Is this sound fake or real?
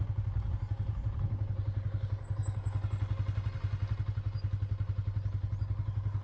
real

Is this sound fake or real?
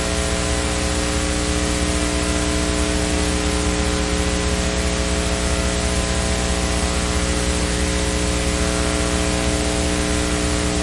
real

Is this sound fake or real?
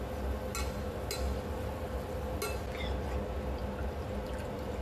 real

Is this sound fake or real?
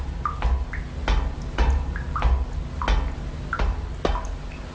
real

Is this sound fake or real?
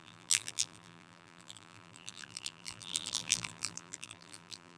fake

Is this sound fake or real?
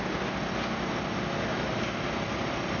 real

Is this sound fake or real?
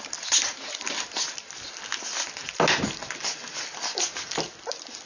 real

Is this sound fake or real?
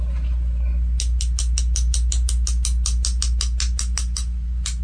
real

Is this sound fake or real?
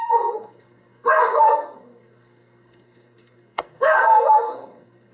fake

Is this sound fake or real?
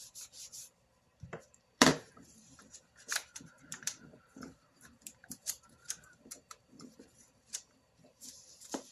fake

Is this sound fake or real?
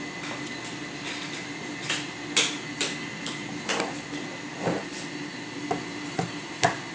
real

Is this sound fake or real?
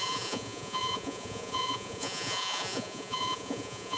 fake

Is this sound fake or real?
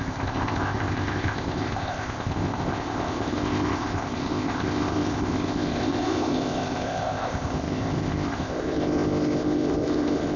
fake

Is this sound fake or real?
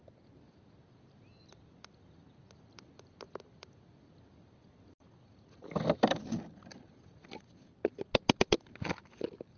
real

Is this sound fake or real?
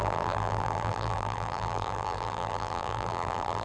fake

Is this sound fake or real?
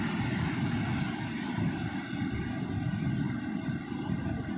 real